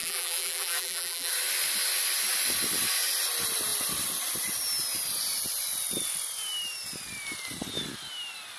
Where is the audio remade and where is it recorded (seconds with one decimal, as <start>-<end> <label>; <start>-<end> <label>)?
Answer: 0.0-1.3 remade; 1.3-8.6 recorded